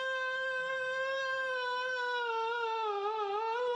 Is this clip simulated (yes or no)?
no